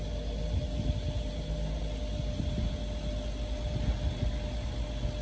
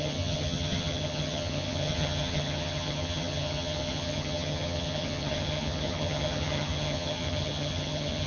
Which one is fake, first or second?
second